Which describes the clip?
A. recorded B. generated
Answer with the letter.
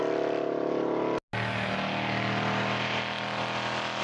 A